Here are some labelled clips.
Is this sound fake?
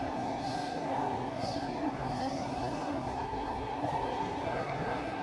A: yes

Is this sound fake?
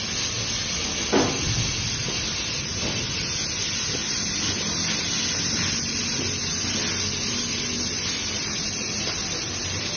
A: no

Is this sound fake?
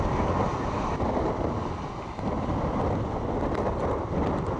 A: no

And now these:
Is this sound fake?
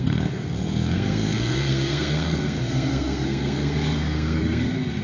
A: yes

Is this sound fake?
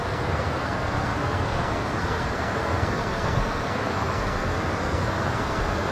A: yes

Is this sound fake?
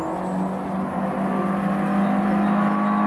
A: no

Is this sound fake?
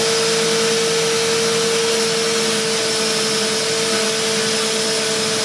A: no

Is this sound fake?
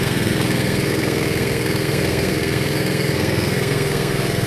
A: yes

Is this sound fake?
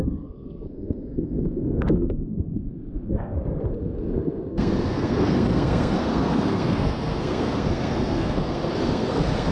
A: yes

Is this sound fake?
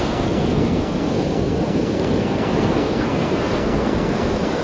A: yes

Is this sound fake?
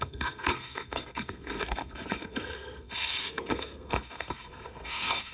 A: yes